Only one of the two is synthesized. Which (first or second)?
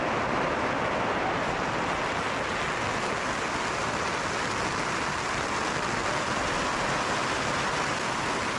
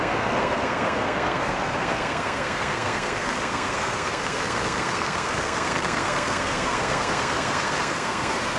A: second